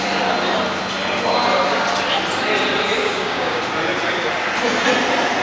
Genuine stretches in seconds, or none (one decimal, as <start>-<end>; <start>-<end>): 0.0-3.0; 3.6-5.4